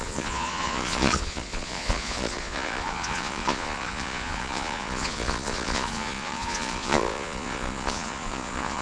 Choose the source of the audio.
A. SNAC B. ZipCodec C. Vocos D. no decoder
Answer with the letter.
C